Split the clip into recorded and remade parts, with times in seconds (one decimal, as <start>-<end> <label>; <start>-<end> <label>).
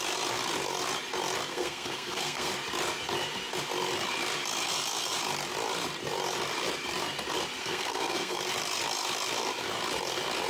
0.0-1.5 recorded; 1.5-2.5 remade; 2.5-7.6 recorded; 7.6-8.4 remade; 8.4-10.5 recorded